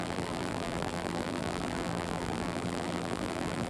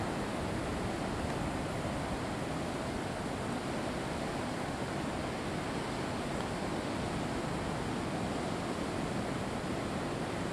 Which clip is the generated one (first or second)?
first